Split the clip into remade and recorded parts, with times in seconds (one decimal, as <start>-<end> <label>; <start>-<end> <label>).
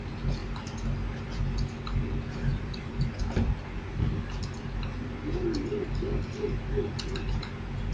0.0-2.5 recorded; 2.5-3.2 remade; 3.2-7.9 recorded